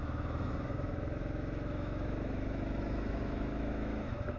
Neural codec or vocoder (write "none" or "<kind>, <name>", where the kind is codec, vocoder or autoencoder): autoencoder, DAC-VAE